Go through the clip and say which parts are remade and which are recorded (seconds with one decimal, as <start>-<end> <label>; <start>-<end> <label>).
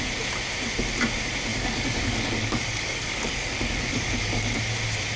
0.0-1.5 recorded; 1.5-4.6 remade; 4.6-5.2 recorded